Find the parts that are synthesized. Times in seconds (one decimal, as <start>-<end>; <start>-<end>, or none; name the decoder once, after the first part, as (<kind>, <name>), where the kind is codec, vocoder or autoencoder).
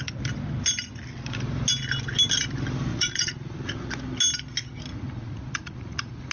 2.9-3.7 (vocoder, Vocos); 4.9-6.3